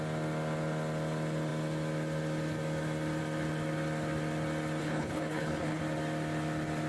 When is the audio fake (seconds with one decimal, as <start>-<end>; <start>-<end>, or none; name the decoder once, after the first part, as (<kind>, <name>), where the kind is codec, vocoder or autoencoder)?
4.8-5.8 (codec, HILCodec)